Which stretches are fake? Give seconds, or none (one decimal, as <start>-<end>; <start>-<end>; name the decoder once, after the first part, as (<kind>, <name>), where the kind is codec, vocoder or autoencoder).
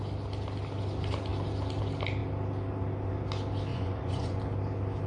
3.7-4.4 (vocoder, Vocos)